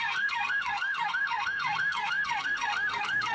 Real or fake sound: fake